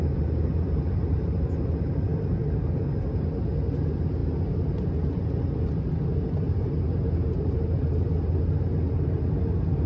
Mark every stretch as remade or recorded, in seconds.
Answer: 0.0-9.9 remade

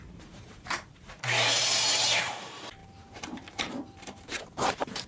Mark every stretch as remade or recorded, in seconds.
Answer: 0.0-5.1 remade

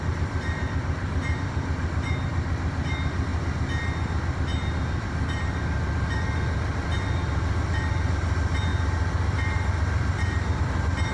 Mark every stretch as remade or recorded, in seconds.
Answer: 0.0-3.3 remade; 3.3-4.3 recorded; 4.3-11.1 remade